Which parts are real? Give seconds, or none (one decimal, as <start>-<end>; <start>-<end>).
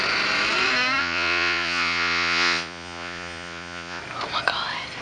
0.0-1.0; 4.0-5.0